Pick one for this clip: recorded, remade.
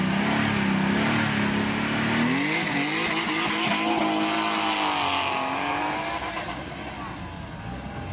recorded